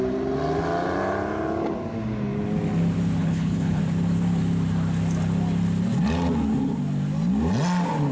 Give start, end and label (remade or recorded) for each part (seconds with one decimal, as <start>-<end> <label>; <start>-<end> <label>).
0.0-3.2 recorded; 3.2-3.8 remade; 3.8-8.1 recorded